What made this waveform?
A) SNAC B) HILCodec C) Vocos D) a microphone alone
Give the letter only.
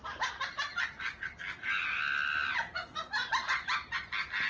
D